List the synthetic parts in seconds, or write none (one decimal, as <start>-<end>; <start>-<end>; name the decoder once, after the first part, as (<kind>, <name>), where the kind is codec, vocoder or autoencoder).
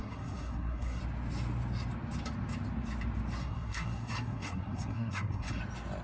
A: 0.0-1.0 (codec, SNAC); 3.4-5.6